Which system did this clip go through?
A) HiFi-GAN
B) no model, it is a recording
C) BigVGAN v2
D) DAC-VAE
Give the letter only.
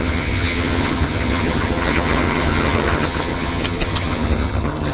A